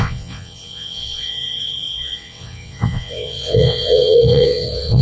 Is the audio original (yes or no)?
no